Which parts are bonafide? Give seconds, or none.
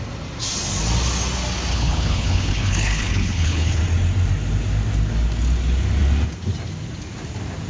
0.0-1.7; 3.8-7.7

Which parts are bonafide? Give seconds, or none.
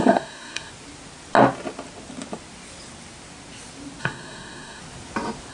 0.7-4.0; 4.8-5.5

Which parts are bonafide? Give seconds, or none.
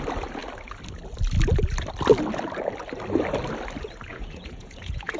0.0-4.1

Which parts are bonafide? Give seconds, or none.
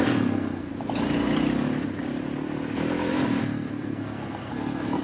0.7-3.1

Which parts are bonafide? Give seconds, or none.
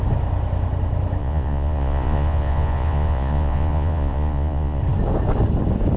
0.0-1.2; 4.8-6.0